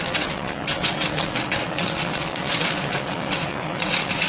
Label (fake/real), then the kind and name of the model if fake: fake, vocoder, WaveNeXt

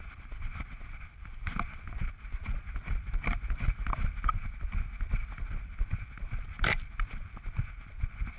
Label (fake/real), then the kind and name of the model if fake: real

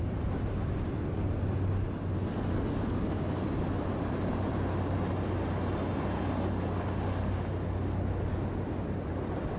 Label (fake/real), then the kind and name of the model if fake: real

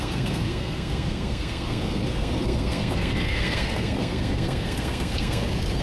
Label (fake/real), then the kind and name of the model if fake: fake, codec, SNAC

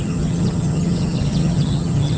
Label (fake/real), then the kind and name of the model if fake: fake, vocoder, HiFi-GAN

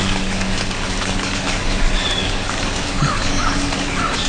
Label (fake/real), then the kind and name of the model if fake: fake, codec, DAC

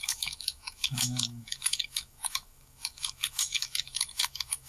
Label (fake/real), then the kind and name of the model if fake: fake, autoencoder, DAC-VAE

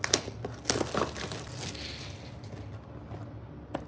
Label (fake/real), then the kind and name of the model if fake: real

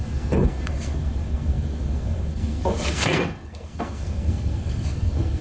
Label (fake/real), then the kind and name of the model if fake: fake, codec, SNAC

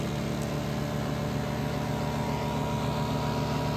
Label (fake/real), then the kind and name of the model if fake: real